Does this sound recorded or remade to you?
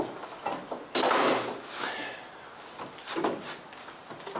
recorded